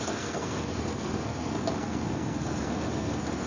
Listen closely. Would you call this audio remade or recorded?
remade